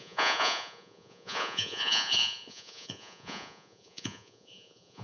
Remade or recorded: remade